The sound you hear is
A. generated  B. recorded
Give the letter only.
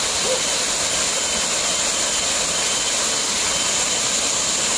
B